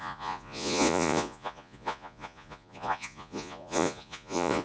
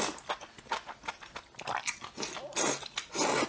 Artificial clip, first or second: first